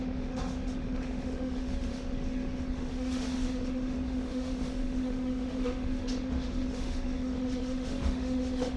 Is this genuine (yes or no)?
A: no